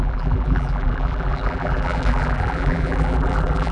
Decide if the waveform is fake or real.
fake